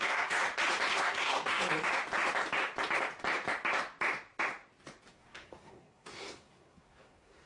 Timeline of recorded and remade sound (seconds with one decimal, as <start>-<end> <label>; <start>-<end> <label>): 0.0-0.4 remade; 0.4-0.9 recorded; 0.9-1.6 remade; 1.6-5.1 recorded; 5.1-7.5 remade